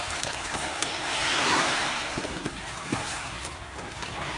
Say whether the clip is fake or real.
fake